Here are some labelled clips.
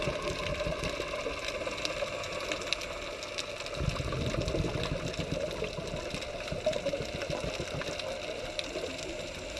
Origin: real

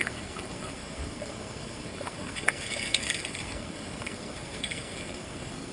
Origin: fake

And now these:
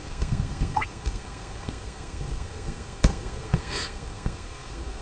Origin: fake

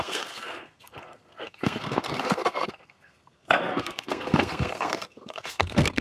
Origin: fake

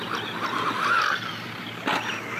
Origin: real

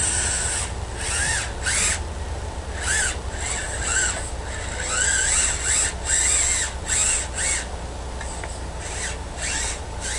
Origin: real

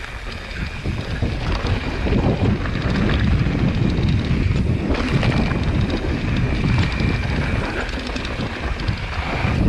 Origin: real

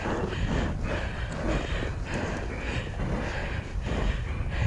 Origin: real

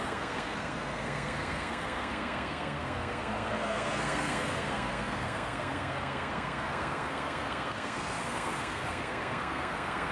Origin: fake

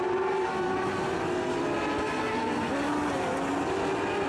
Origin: real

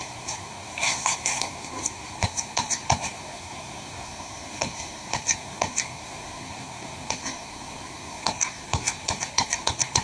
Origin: fake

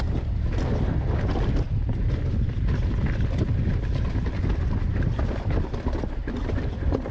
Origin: real